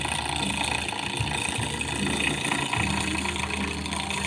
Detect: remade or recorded recorded